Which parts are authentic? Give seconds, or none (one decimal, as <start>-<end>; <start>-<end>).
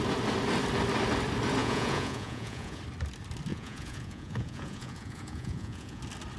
0.0-1.6; 2.8-3.5; 6.0-6.4